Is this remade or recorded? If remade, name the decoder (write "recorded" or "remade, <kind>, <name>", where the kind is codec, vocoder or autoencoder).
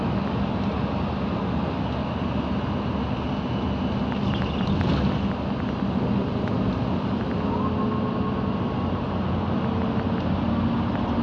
recorded